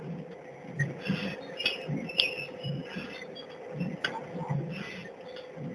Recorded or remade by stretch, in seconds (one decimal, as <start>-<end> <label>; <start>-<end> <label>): 0.0-5.7 recorded